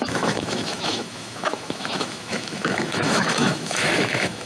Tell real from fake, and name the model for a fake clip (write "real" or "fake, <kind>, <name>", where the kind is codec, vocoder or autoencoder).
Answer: fake, autoencoder, DAC-VAE